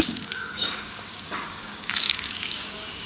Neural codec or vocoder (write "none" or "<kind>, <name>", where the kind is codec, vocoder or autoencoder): codec, DAC